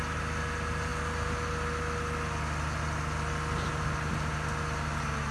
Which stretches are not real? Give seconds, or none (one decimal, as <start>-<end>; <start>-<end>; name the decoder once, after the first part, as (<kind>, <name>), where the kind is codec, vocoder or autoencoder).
none